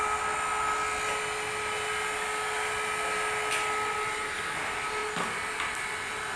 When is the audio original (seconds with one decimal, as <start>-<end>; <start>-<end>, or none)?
0.0-6.4